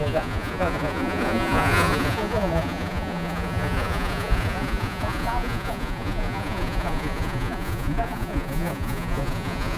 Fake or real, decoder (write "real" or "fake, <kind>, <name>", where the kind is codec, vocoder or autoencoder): fake, vocoder, Vocos